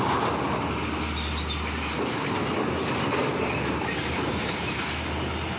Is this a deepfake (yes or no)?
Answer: no